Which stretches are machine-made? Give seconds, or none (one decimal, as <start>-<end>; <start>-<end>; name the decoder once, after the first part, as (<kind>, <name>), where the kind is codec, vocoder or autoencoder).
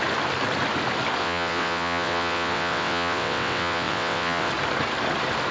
1.2-4.5 (vocoder, WaveNeXt)